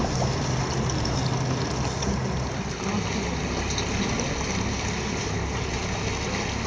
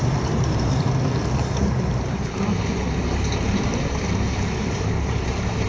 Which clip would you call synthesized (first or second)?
second